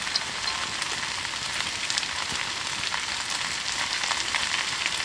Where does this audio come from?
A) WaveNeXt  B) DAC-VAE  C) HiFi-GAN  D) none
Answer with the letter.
D